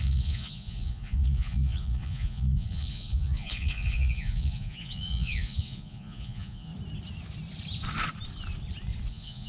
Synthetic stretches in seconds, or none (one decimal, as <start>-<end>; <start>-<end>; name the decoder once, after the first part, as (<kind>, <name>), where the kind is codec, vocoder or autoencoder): 0.0-6.7 (vocoder, Vocos); 9.1-9.5

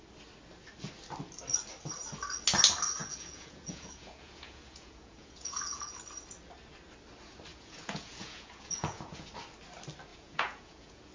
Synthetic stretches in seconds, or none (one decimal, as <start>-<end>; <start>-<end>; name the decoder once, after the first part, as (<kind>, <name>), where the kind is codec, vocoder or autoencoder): 3.0-5.9 (vocoder, Vocos); 7.5-9.3; 10.1-11.1